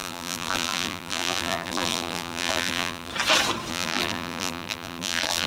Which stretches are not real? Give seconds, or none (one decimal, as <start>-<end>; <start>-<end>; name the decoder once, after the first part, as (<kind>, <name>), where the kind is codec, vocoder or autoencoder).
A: 0.0-3.1 (vocoder, BigVGAN v2); 3.7-5.5